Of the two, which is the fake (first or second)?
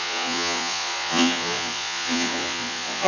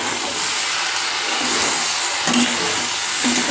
first